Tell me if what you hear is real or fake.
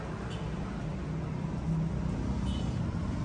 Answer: real